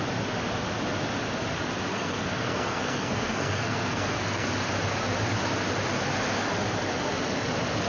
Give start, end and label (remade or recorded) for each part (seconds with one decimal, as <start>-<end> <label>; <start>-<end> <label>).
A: 0.0-1.9 recorded; 1.9-4.5 remade; 4.5-7.9 recorded